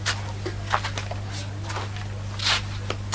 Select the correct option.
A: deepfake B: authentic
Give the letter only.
B